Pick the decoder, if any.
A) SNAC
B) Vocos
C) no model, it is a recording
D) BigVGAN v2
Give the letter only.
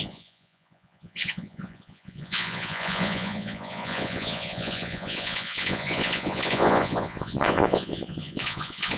B